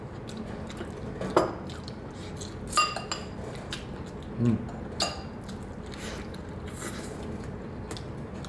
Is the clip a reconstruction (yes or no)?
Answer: no